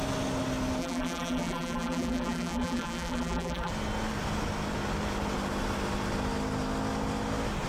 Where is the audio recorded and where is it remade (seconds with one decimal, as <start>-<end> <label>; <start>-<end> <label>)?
0.0-0.8 recorded; 0.8-3.7 remade; 3.7-7.7 recorded